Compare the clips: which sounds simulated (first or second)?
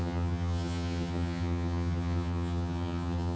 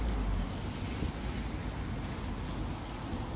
first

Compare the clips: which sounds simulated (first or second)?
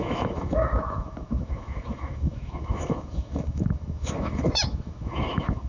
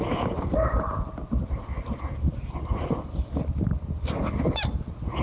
first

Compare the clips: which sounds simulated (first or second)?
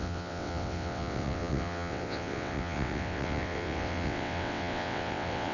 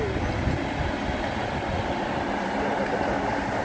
first